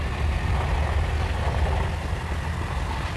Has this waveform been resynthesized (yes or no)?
no